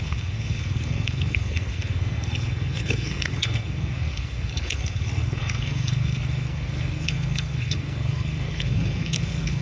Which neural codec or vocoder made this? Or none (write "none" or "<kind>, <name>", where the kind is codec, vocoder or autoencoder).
codec, SNAC